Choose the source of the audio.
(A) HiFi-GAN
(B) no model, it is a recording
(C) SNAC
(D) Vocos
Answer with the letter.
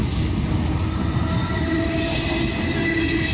B